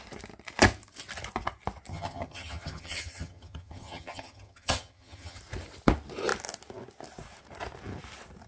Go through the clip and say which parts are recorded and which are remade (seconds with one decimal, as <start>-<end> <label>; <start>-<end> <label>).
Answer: 0.0-1.9 recorded; 1.9-5.4 remade; 5.4-8.5 recorded